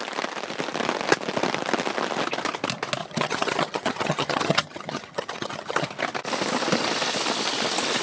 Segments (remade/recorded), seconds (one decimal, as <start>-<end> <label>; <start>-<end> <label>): 0.0-3.0 recorded; 3.0-5.9 remade; 5.9-8.0 recorded